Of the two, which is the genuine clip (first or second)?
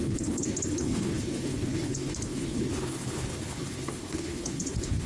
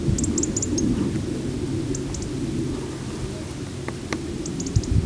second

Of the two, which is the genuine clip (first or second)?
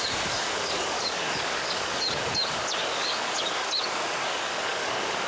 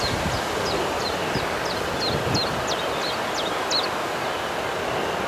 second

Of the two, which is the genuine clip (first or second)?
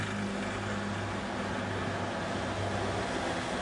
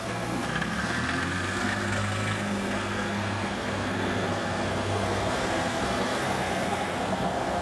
first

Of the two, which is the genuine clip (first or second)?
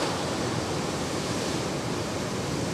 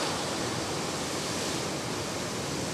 second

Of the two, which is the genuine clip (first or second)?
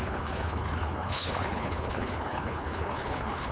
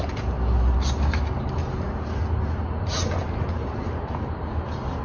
second